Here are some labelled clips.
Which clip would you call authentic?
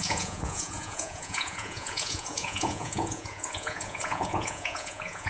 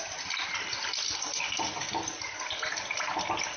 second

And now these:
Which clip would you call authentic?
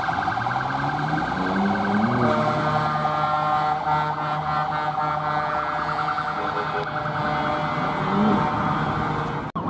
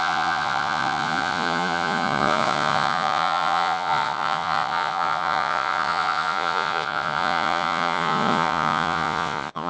first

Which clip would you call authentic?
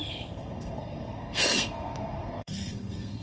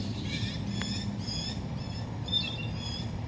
second